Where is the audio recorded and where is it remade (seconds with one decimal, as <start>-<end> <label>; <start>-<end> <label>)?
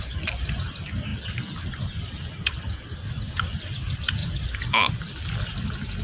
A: 0.0-4.2 recorded; 4.2-4.9 remade; 4.9-6.0 recorded